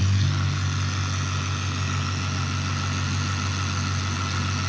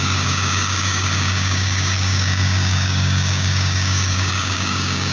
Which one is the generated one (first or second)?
second